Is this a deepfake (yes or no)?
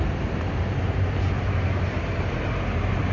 no